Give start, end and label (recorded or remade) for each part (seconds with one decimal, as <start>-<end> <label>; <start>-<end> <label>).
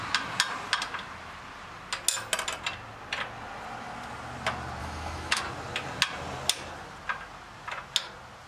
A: 0.0-4.8 recorded; 4.8-5.4 remade; 5.4-8.5 recorded